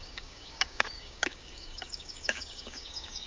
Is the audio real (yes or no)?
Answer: no